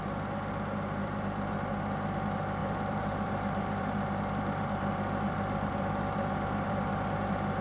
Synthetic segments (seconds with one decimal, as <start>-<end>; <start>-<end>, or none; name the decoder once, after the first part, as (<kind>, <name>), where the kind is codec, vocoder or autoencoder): 1.0-1.7 (vocoder, BigVGAN v2); 2.6-7.6